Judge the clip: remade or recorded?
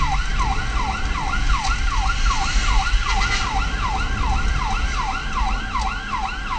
recorded